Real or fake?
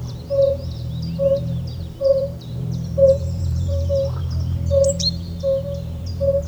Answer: fake